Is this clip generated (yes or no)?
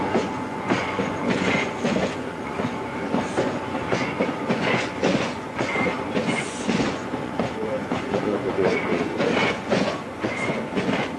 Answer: yes